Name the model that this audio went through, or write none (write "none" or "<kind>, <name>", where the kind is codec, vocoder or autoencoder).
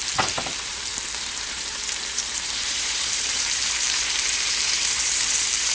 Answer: vocoder, BigVGAN v2